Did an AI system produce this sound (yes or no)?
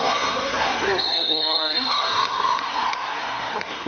yes